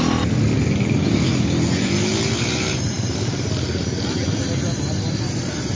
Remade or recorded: recorded